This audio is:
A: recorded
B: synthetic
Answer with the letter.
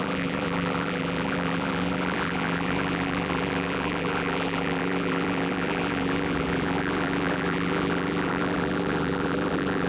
B